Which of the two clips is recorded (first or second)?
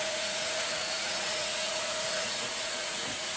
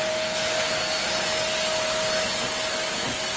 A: second